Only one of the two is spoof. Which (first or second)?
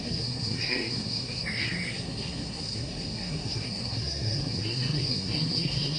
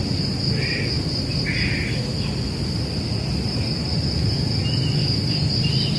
first